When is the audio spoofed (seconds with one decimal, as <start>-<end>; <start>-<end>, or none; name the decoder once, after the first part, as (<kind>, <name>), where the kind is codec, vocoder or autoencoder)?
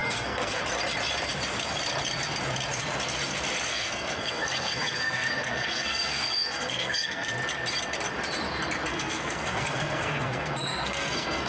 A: 0.0-0.6 (codec, SNAC); 3.7-7.3; 8.9-11.5